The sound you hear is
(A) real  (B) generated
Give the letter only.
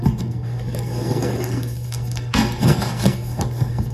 B